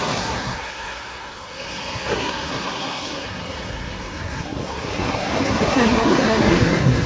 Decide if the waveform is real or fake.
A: fake